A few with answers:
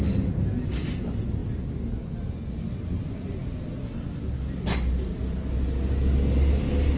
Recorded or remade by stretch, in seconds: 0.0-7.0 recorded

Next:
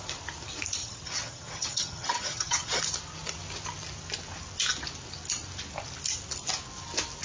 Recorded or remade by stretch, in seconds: 0.0-0.8 recorded; 0.8-2.8 remade; 2.8-7.2 recorded